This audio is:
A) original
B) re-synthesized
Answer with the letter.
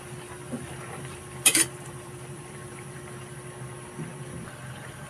B